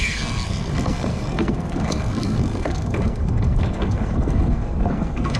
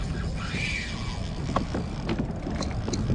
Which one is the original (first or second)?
second